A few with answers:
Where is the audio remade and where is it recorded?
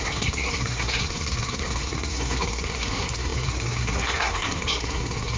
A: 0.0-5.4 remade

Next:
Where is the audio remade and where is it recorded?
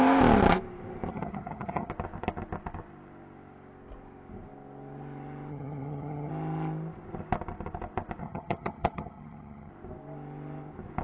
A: 0.0-1.1 recorded; 1.1-1.9 remade; 1.9-5.5 recorded; 5.5-6.3 remade; 6.3-8.2 recorded; 8.2-9.7 remade; 9.7-11.0 recorded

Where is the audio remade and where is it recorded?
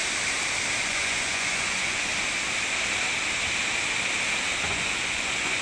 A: 0.0-0.8 recorded; 0.8-2.1 remade; 2.1-4.6 recorded; 4.6-5.6 remade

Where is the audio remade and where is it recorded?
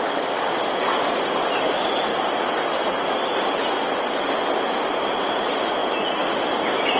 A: 0.0-7.0 recorded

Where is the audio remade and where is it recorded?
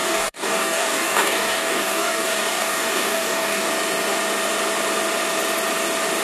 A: 0.0-3.7 remade; 3.7-6.2 recorded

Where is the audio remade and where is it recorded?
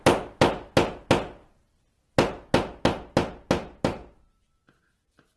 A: 0.0-5.4 recorded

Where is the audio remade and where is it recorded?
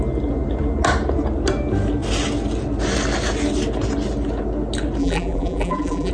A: 0.0-5.0 recorded; 5.0-6.1 remade